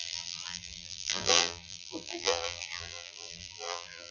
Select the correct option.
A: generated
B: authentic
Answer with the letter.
A